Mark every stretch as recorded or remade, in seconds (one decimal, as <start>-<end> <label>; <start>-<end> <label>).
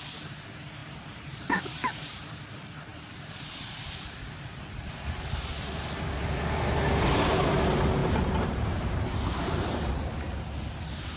0.0-0.8 recorded; 0.8-2.4 remade; 2.4-8.0 recorded; 8.0-9.9 remade; 9.9-11.2 recorded